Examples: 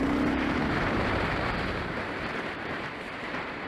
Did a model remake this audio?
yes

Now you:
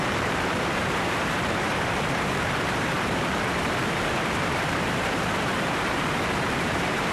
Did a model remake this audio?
yes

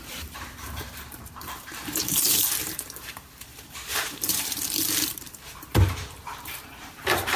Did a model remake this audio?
yes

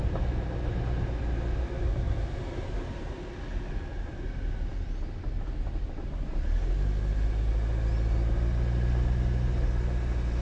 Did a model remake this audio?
no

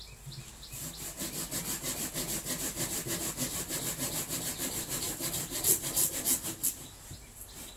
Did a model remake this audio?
no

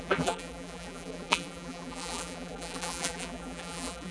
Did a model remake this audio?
yes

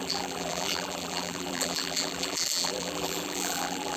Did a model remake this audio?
yes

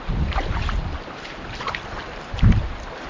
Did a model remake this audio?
yes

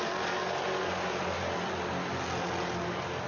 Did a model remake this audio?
no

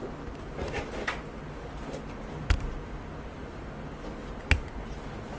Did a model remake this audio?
no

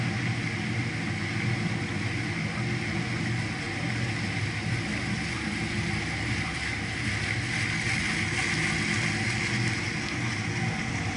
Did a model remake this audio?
no